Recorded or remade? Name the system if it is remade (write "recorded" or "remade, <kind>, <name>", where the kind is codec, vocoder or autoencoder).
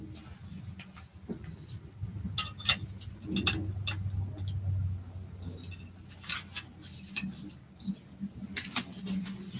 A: recorded